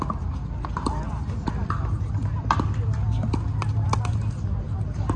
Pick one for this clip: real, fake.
real